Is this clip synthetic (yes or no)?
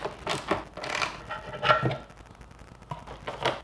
no